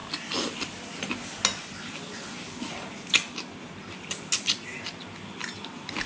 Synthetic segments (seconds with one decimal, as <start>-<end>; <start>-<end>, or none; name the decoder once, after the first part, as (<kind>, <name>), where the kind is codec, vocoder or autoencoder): none